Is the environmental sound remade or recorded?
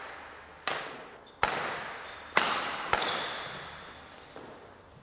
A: recorded